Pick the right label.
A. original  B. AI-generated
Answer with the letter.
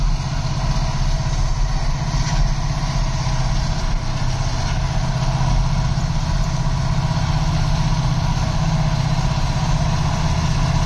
A